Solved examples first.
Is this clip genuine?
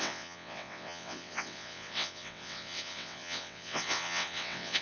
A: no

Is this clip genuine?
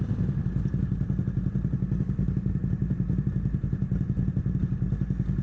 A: yes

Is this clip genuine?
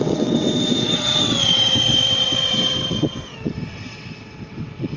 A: no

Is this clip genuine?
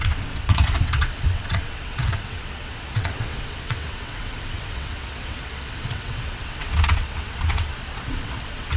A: no